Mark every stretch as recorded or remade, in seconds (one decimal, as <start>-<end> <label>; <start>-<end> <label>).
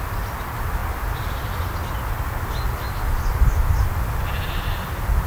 0.0-5.3 recorded